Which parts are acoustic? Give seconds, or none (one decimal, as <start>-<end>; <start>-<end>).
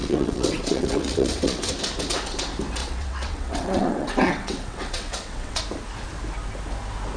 1.7-2.8; 5.6-7.2